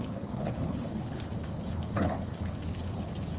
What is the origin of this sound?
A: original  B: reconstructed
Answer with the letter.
B